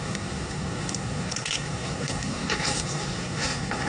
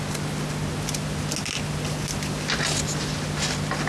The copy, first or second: first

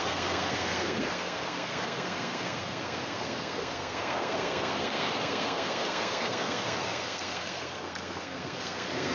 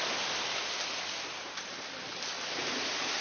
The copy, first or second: first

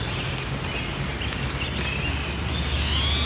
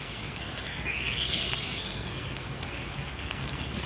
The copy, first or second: second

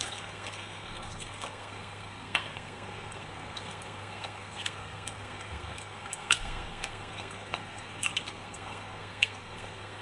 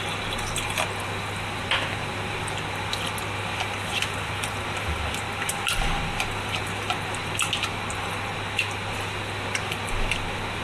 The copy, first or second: first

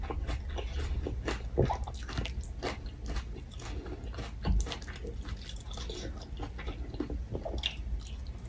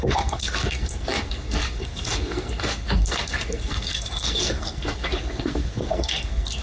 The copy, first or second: second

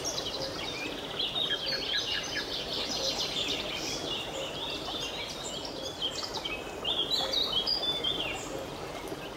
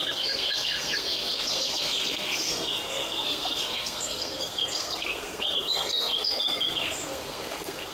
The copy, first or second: second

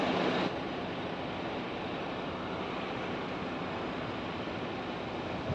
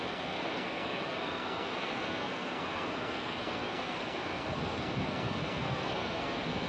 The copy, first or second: second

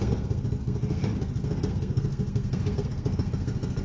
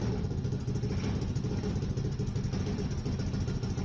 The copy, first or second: first